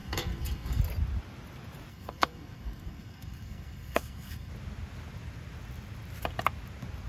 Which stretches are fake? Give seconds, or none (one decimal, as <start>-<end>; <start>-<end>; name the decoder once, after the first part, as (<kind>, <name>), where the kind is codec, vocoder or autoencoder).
0.0-0.8 (codec, SNAC); 1.9-4.5